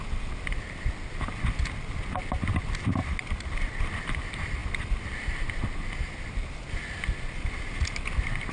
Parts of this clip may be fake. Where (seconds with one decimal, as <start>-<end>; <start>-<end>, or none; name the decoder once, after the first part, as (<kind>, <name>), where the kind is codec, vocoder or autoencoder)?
none